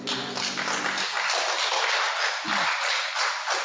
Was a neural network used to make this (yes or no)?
no